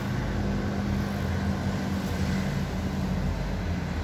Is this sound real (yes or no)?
yes